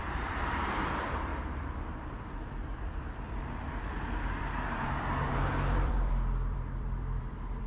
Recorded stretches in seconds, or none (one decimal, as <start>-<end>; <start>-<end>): 1.3-5.3